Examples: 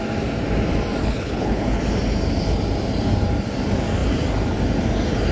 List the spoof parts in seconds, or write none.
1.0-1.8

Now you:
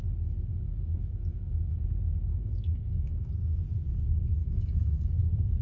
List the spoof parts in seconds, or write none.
0.5-1.8; 2.3-3.3; 4.4-5.0